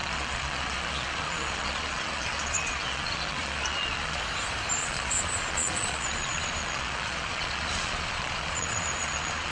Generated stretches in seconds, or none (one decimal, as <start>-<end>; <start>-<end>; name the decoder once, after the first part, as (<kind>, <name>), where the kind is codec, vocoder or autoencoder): 0.0-4.2 (vocoder, Vocos); 4.8-9.5